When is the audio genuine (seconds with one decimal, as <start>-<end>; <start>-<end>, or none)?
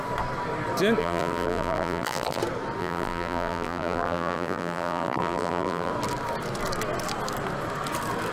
0.0-1.0; 2.4-2.8; 5.9-8.3